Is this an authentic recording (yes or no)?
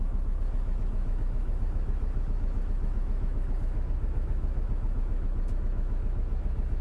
no